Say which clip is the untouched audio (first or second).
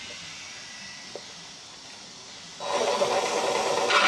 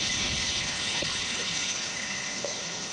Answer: first